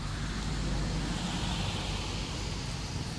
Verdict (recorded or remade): recorded